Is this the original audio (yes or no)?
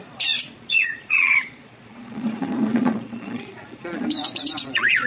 no